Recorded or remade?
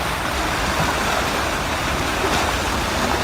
recorded